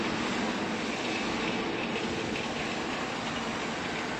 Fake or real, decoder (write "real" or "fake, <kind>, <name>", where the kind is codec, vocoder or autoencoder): real